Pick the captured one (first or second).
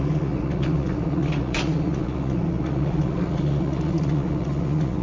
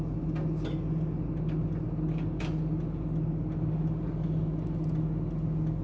second